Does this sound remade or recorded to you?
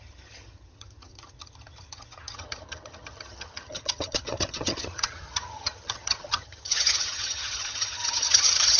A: remade